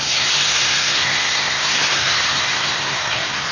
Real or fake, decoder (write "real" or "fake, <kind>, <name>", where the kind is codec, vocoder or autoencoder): fake, codec, SNAC